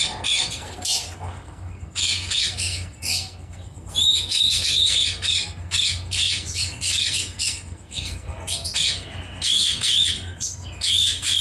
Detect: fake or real fake